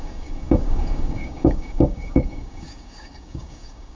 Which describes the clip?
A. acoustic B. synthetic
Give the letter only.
B